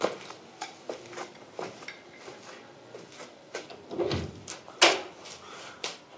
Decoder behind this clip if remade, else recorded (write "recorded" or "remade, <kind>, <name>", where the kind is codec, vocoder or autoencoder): recorded